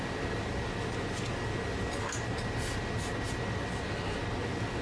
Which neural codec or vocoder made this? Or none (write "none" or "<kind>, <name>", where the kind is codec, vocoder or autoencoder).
none